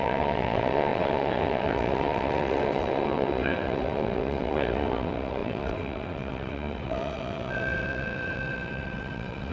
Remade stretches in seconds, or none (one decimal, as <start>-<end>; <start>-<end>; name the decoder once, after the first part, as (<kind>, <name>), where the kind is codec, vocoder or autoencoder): 0.0-9.5 (vocoder, WaveNeXt)